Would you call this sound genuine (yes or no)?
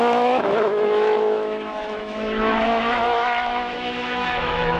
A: no